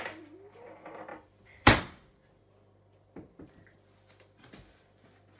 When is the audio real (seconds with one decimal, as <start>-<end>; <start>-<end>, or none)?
0.0-1.1; 2.4-5.4